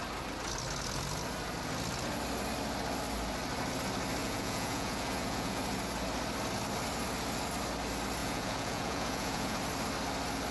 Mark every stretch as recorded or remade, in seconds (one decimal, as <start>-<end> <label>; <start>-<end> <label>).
0.0-4.2 recorded; 4.2-5.6 remade; 5.6-8.2 recorded; 8.2-9.6 remade; 9.6-10.5 recorded